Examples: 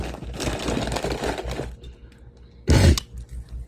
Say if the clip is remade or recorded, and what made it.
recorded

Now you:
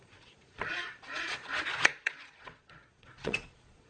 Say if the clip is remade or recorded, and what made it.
remade, vocoder, Vocos